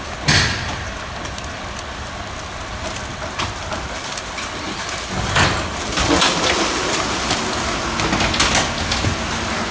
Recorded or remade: recorded